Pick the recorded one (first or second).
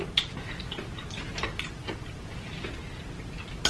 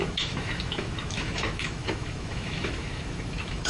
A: first